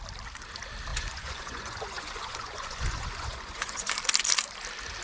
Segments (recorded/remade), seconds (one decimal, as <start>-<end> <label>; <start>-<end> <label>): 0.0-0.9 recorded; 0.9-3.9 remade; 3.9-5.0 recorded